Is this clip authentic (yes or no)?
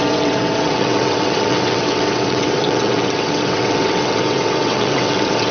no